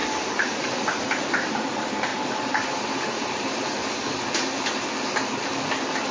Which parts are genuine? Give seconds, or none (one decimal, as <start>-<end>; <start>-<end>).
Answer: 0.0-1.5; 3.8-6.1